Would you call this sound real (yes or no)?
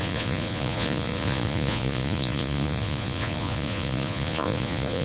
no